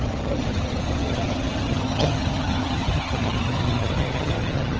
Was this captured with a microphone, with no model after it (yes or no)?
no